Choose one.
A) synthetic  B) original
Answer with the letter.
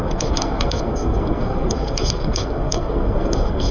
A